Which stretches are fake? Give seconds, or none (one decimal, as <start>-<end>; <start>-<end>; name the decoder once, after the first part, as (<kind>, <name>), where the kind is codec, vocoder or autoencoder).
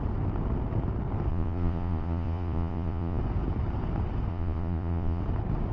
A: 1.3-3.2 (vocoder, Vocos); 4.3-5.2